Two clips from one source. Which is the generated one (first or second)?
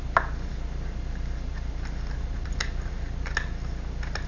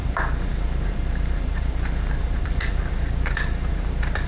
second